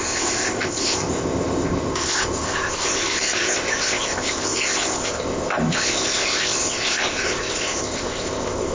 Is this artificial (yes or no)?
yes